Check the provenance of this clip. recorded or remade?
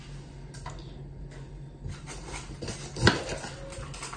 recorded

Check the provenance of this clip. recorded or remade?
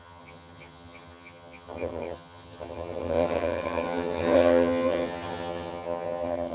remade